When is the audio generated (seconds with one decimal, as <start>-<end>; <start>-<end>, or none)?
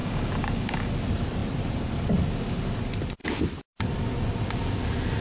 0.0-0.9